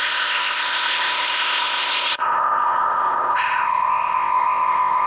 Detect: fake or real fake